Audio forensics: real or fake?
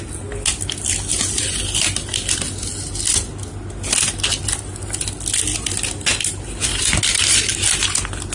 real